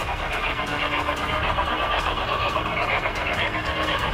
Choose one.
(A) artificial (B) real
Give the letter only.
A